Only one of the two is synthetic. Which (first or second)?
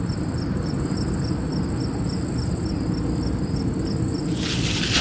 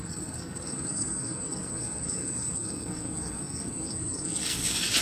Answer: second